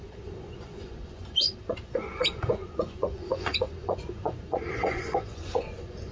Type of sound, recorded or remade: remade